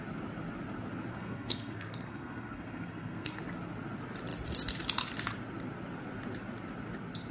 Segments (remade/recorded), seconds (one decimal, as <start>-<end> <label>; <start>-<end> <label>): 0.0-1.1 recorded; 1.1-3.4 remade; 3.4-7.3 recorded